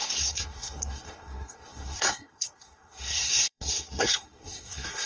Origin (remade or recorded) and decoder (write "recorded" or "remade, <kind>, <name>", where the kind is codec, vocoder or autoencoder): remade, codec, SNAC